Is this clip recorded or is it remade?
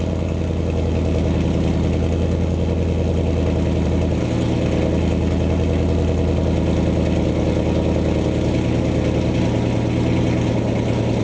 recorded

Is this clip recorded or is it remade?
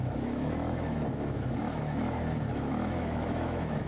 remade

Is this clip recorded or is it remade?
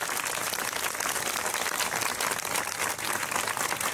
recorded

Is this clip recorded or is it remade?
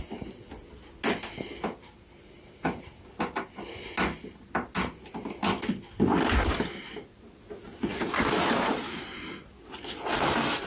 recorded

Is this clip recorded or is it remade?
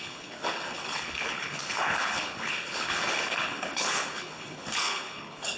remade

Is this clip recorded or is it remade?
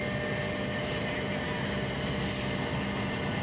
recorded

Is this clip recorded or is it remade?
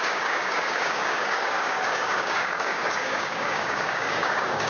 remade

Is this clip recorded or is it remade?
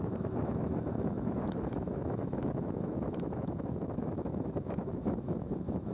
remade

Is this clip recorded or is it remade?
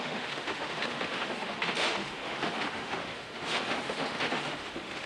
remade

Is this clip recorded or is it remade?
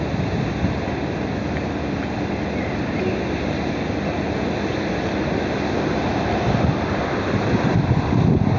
recorded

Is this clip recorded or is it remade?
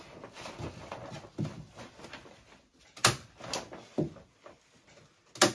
recorded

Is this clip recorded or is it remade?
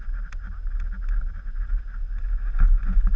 recorded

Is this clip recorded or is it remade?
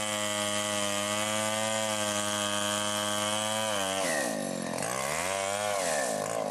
recorded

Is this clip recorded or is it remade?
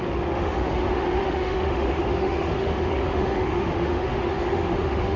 remade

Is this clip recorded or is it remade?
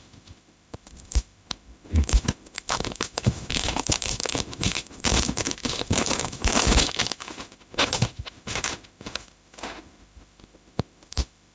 remade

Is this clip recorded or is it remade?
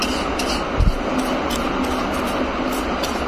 recorded